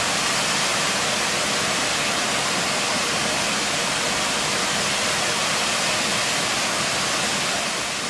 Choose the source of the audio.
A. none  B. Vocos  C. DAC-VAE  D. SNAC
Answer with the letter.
A